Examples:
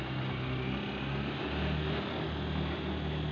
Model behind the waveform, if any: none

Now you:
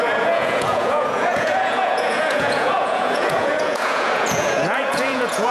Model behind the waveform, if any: vocoder, Vocos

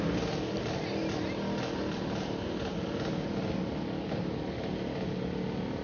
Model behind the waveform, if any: none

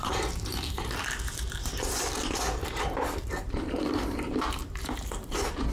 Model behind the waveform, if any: vocoder, BigVGAN v2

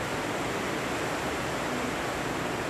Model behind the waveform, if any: none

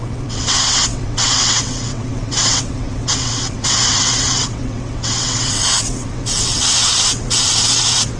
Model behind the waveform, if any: vocoder, WaveNeXt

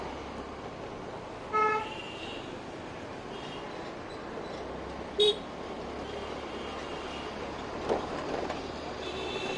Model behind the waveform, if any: none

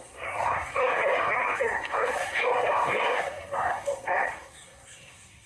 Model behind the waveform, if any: codec, SNAC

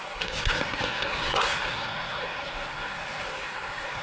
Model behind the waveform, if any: codec, SNAC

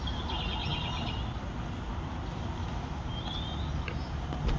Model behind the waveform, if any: none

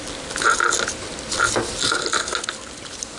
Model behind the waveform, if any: none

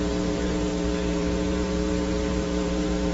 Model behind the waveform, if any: vocoder, BigVGAN v2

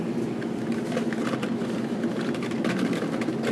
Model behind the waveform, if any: none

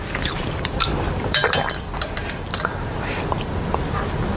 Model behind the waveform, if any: vocoder, BigVGAN v2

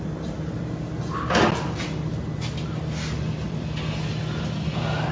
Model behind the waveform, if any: none